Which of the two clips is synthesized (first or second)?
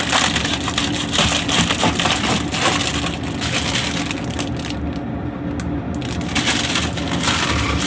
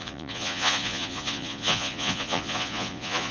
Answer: second